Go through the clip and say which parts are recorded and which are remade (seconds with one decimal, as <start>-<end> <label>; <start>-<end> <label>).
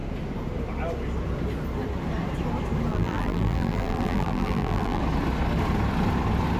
0.0-2.9 recorded; 2.9-5.0 remade; 5.0-6.6 recorded